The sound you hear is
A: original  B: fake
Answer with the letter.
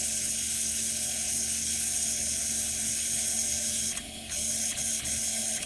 B